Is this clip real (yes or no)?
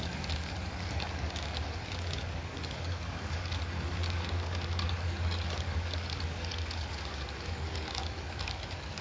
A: no